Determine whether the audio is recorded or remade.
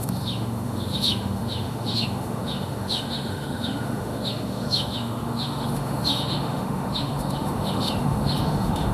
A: remade